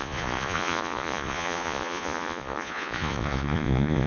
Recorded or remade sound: remade